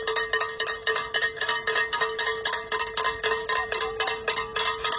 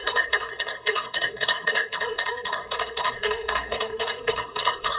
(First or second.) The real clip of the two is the first